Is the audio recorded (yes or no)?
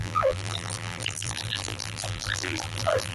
no